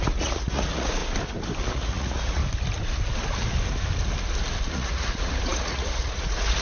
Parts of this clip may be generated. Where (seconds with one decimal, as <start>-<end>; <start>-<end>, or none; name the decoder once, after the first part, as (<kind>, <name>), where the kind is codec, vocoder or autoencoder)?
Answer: 0.0-1.0 (vocoder, Vocos); 1.7-2.4; 4.7-6.6